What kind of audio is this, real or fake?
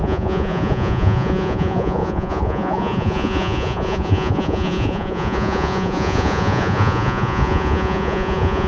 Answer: fake